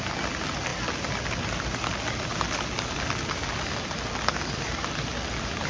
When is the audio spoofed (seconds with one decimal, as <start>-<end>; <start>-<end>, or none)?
none